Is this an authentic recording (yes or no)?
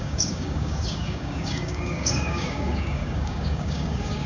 no